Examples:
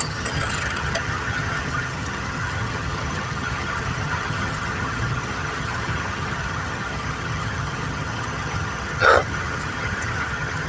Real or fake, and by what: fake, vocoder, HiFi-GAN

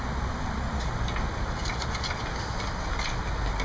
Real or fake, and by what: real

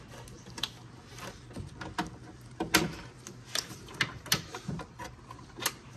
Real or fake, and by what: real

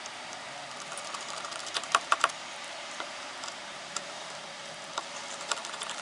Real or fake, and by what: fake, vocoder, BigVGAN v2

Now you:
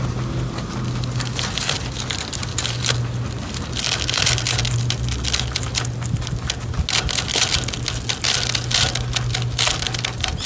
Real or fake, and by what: real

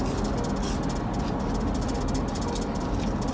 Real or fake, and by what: real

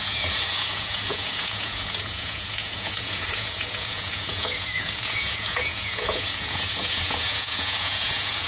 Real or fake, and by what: fake, vocoder, Vocos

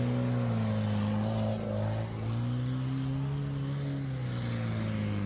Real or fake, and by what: real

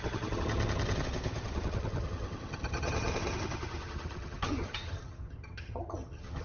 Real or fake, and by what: fake, vocoder, HiFi-GAN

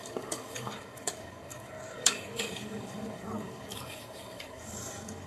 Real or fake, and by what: fake, codec, DAC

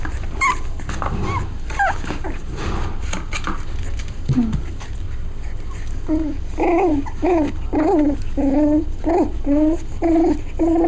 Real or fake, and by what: real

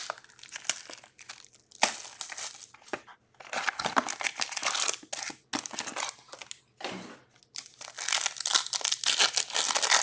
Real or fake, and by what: real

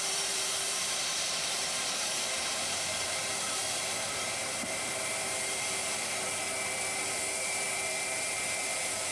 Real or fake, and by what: fake, vocoder, BigVGAN v2